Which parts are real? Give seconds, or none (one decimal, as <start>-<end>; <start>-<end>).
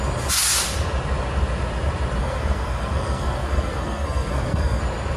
0.0-2.2; 4.8-5.2